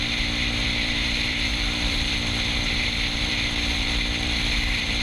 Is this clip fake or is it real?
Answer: fake